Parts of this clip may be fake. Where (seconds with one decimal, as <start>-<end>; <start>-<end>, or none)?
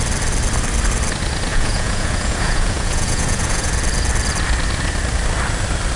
1.5-3.7